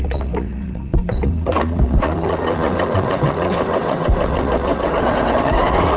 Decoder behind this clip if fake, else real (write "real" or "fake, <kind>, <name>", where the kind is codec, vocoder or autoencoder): fake, vocoder, WaveNeXt